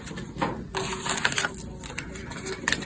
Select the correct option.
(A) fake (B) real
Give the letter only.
B